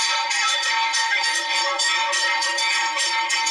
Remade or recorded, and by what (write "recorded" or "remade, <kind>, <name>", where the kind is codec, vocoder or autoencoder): remade, autoencoder, DAC-VAE